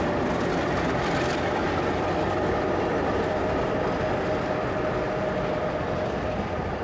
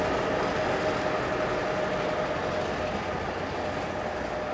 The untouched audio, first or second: second